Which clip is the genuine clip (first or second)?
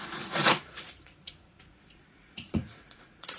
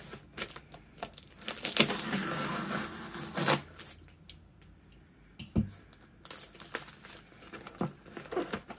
second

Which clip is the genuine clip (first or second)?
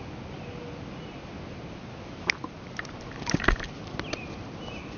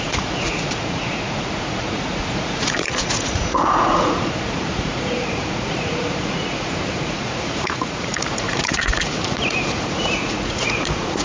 first